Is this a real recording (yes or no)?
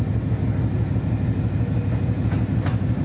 yes